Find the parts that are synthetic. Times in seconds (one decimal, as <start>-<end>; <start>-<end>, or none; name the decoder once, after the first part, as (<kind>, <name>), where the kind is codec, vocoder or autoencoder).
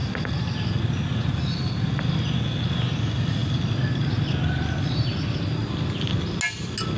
none